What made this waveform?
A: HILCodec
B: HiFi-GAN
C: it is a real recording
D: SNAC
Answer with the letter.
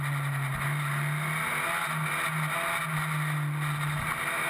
C